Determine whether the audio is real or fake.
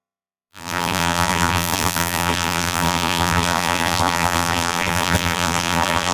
fake